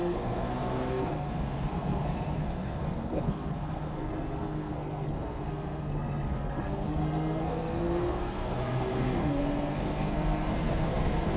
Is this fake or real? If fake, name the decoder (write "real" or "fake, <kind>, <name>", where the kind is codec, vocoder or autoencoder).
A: fake, codec, SNAC